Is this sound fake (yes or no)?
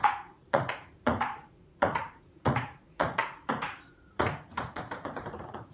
yes